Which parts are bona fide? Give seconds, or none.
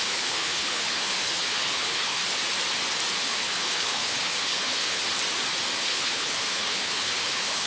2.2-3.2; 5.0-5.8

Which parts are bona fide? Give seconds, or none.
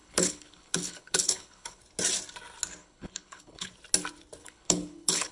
1.8-2.8; 3.7-4.4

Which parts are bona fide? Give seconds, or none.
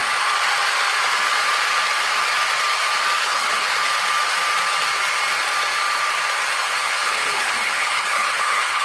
0.0-3.2; 3.7-6.6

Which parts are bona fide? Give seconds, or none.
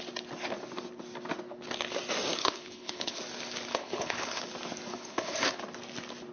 0.0-2.4; 3.2-3.7; 4.4-4.9; 5.6-6.3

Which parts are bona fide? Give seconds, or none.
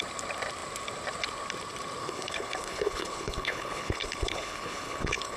0.0-2.0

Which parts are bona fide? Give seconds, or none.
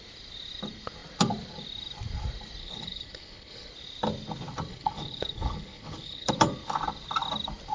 0.0-2.6; 3.7-4.7; 6.3-7.7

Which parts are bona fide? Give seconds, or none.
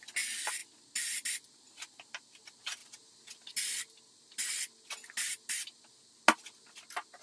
0.0-7.2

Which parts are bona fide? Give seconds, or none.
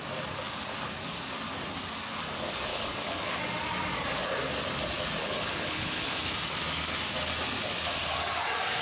0.0-2.7; 3.4-5.2; 6.2-8.8